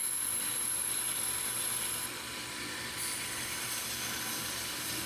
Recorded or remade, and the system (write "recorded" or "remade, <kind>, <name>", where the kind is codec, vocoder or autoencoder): recorded